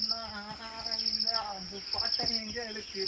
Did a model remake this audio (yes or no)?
no